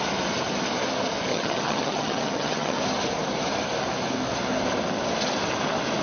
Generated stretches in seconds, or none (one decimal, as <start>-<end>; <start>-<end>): 1.3-2.8